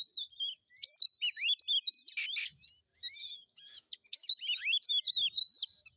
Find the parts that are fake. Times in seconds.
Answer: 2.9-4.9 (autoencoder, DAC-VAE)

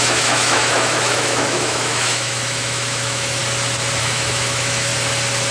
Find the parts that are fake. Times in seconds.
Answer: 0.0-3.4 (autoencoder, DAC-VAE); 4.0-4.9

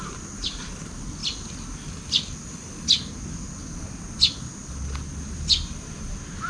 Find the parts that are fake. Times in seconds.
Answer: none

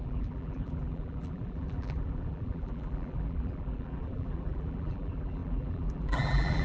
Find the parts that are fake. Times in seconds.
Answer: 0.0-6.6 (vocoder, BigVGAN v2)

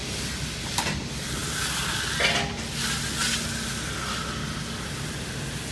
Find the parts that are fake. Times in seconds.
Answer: none

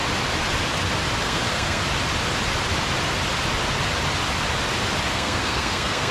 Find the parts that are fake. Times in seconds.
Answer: 1.2-1.8 (codec, SNAC); 5.1-6.1

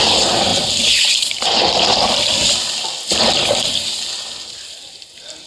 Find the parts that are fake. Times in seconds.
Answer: none